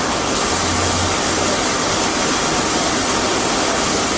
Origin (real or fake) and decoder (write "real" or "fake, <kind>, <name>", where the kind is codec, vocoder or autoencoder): real